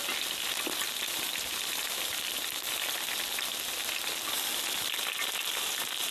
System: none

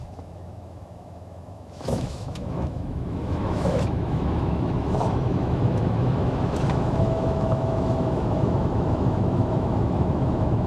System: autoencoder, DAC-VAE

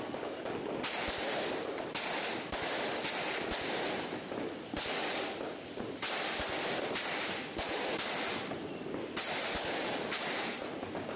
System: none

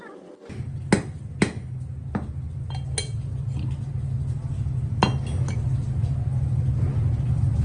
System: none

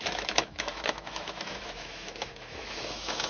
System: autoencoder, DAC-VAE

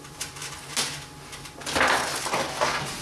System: none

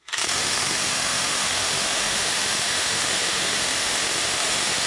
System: autoencoder, DAC-VAE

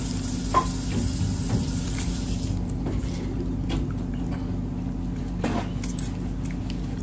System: none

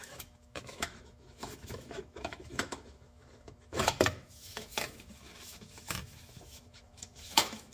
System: autoencoder, DAC-VAE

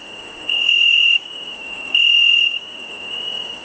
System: autoencoder, DAC-VAE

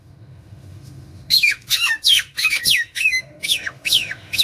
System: autoencoder, DAC-VAE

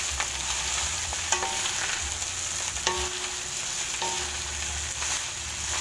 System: none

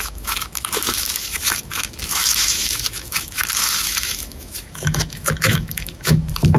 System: autoencoder, DAC-VAE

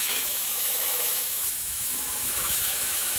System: autoencoder, DAC-VAE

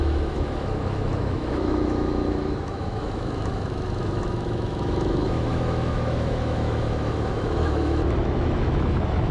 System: autoencoder, DAC-VAE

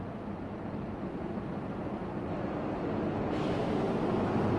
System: none